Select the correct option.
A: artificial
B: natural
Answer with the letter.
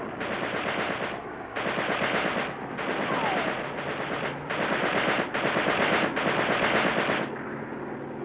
B